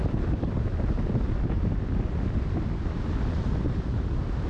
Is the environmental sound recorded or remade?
remade